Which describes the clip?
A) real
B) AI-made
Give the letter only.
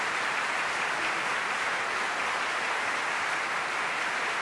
A